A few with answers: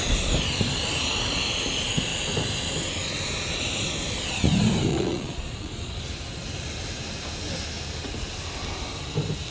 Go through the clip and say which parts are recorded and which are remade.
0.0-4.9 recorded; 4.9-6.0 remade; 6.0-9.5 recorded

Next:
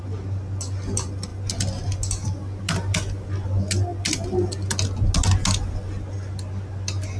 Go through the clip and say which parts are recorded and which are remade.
0.0-7.2 recorded

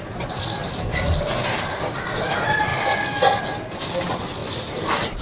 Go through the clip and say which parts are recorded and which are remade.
0.0-4.4 recorded; 4.4-5.2 remade

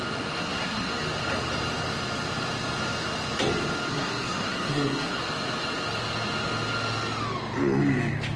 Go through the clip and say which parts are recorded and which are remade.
0.0-0.4 recorded; 0.4-0.9 remade; 0.9-3.9 recorded; 3.9-5.2 remade; 5.2-8.4 recorded

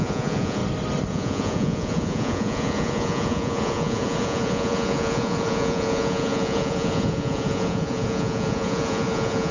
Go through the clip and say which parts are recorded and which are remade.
0.0-0.6 remade; 0.6-1.1 recorded; 1.1-9.5 remade

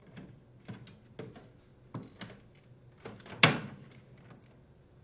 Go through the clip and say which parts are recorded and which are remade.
0.0-5.0 recorded

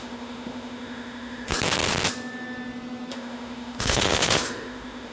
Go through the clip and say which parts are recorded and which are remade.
0.0-1.5 remade; 1.5-3.1 recorded; 3.1-5.1 remade

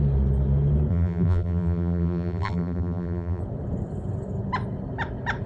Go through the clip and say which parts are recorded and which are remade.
0.0-0.9 recorded; 0.9-3.4 remade; 3.4-5.5 recorded